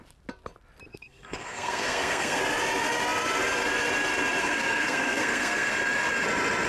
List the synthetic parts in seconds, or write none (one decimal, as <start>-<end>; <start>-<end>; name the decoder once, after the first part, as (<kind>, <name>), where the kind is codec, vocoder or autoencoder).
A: 0.9-2.4 (codec, SNAC); 4.4-5.7